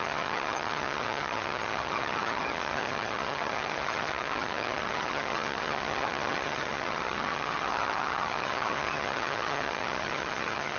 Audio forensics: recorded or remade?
remade